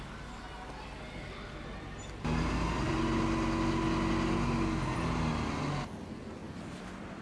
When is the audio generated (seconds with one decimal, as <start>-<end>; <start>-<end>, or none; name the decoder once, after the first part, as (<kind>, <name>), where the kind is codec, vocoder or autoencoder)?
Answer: none